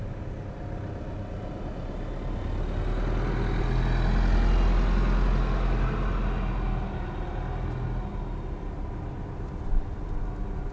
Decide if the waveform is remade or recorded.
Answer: recorded